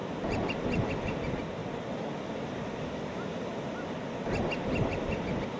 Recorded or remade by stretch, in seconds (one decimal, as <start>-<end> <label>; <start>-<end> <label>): 0.0-1.6 remade; 1.6-5.0 recorded; 5.0-5.6 remade